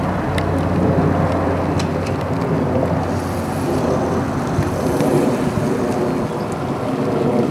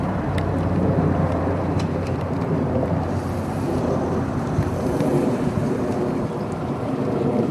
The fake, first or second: second